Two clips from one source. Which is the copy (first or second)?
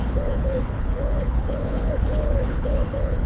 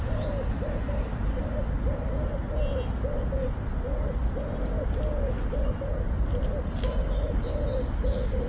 first